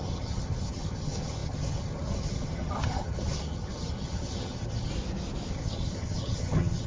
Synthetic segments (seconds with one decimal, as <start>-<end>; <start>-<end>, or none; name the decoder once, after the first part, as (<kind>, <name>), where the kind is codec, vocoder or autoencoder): 0.0-4.9 (vocoder, HiFi-GAN); 5.5-6.9